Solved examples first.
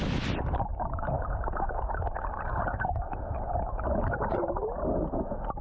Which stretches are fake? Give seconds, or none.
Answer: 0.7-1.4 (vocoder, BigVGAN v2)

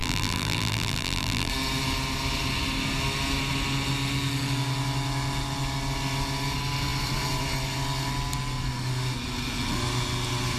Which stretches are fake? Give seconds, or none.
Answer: 0.0-1.5 (vocoder, BigVGAN v2)

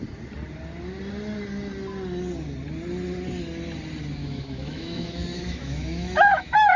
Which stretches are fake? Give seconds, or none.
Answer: 4.2-6.8 (autoencoder, DAC-VAE)

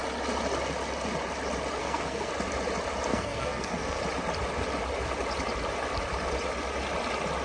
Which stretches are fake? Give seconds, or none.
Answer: 1.8-2.3 (codec, SNAC); 3.1-4.0

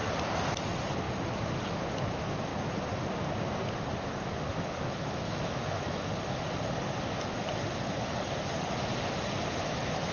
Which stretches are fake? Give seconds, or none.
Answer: 1.9-2.5 (autoencoder, DAC-VAE); 4.6-6.1; 9.5-10.1

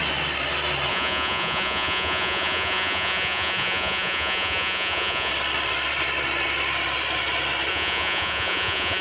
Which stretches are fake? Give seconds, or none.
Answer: 0.9-5.3 (vocoder, Vocos); 7.7-9.0